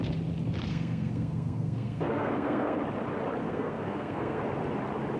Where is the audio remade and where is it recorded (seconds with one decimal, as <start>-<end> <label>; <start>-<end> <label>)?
0.0-0.6 recorded; 0.6-2.8 remade; 2.8-3.4 recorded; 3.4-4.4 remade; 4.4-5.2 recorded